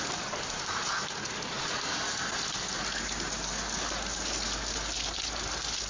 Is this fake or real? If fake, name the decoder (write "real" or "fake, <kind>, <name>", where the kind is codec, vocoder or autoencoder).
real